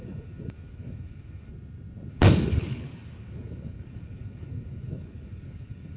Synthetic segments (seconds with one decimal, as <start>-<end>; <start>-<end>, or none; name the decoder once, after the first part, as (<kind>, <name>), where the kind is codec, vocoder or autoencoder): 0.0-1.5 (codec, DAC); 2.1-6.0